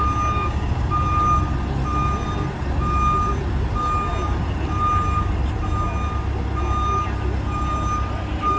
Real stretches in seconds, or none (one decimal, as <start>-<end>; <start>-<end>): 0.0-0.4; 0.9-8.6